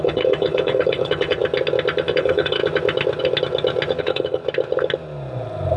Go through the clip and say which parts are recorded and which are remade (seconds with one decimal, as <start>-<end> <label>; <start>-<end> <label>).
0.0-1.4 remade; 1.4-2.1 recorded; 2.1-2.6 remade; 2.6-4.0 recorded; 4.0-4.4 remade; 4.4-5.8 recorded